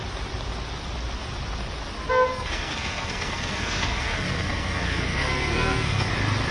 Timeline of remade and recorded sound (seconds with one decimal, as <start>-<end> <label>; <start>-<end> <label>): 0.0-2.3 recorded; 2.3-6.1 remade; 6.1-6.5 recorded